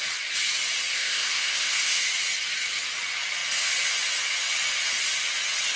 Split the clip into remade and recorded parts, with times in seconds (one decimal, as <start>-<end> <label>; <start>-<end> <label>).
0.0-0.9 recorded; 0.9-2.0 remade; 2.0-5.8 recorded